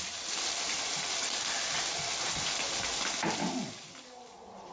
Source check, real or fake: real